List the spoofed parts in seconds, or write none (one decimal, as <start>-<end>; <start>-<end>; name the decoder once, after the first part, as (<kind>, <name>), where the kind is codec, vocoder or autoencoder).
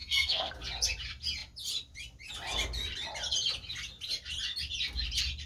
0.0-0.5 (codec, SNAC)